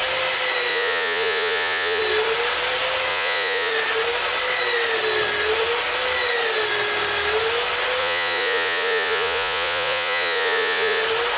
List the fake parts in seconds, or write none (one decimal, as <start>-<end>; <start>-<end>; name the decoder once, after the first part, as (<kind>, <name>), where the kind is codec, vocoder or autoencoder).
0.7-2.0 (vocoder, Vocos); 3.1-3.7; 8.0-11.0